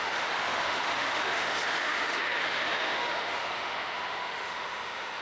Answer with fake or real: fake